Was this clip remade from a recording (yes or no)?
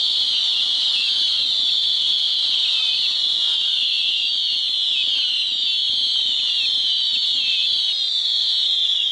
no